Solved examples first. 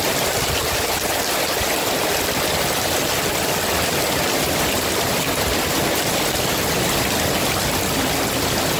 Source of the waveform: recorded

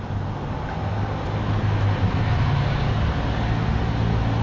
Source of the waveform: recorded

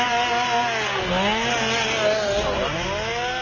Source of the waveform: recorded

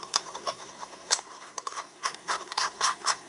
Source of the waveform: remade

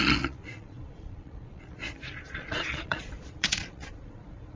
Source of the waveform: remade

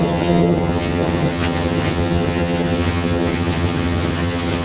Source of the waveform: remade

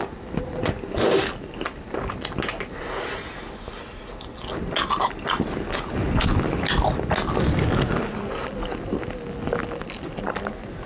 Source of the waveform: recorded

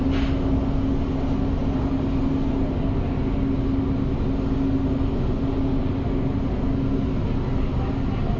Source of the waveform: recorded